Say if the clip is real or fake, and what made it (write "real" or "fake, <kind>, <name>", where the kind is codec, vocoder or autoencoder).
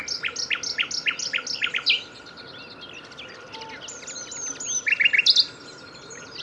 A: real